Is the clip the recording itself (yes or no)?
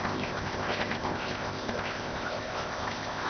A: no